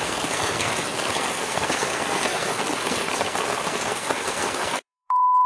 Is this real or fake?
fake